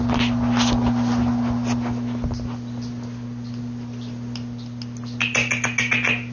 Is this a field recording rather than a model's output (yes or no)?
yes